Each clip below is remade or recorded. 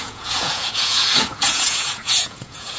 remade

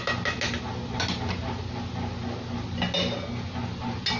recorded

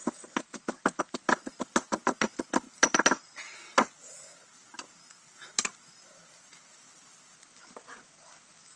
recorded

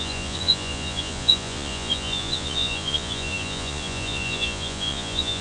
remade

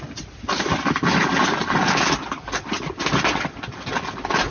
recorded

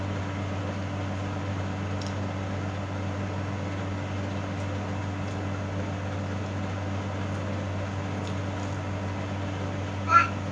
recorded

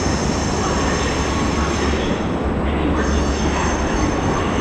recorded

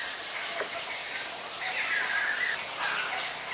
recorded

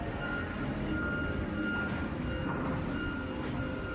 recorded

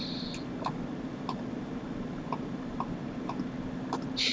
recorded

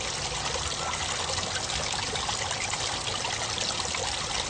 recorded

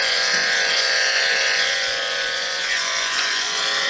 remade